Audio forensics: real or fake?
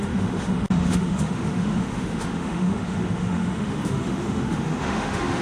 fake